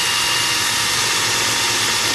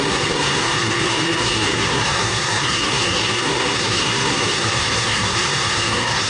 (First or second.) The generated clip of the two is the second